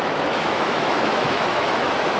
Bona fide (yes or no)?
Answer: no